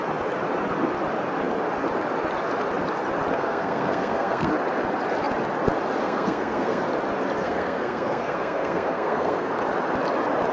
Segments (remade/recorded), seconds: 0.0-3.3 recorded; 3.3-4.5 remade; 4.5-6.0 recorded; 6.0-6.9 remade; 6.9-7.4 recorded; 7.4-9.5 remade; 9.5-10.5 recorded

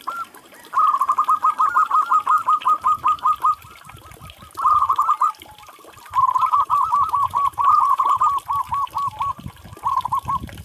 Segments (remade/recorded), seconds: 0.0-6.4 recorded; 6.4-8.2 remade; 8.2-10.6 recorded

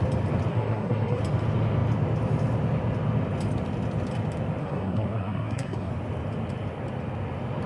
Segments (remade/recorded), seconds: 0.0-0.5 recorded; 0.5-1.2 remade; 1.2-4.6 recorded; 4.6-5.9 remade; 5.9-7.7 recorded

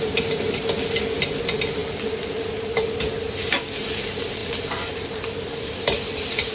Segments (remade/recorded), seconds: 0.0-6.5 recorded

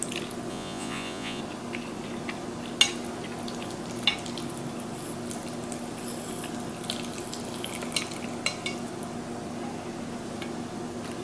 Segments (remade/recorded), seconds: 0.0-0.5 recorded; 0.5-1.4 remade; 1.4-11.2 recorded

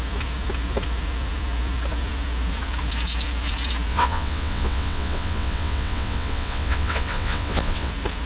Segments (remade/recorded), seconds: 0.0-3.9 recorded; 3.9-7.9 remade; 7.9-8.3 recorded

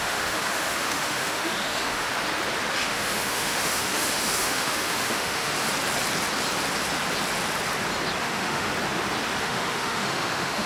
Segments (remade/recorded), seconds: 0.0-2.1 remade; 2.1-2.7 recorded; 2.7-5.5 remade; 5.5-8.2 recorded; 8.2-8.7 remade; 8.7-9.4 recorded; 9.4-10.7 remade

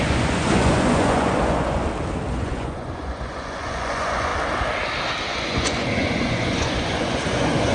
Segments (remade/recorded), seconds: 0.0-1.8 remade; 1.8-2.3 recorded; 2.3-4.3 remade; 4.3-5.3 recorded; 5.3-7.7 remade